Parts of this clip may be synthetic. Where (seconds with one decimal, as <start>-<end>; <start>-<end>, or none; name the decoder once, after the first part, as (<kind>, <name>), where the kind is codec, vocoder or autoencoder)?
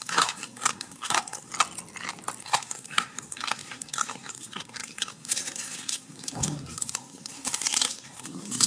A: 0.0-1.5 (codec, SNAC); 2.4-8.7